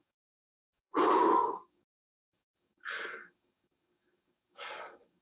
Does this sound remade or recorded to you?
remade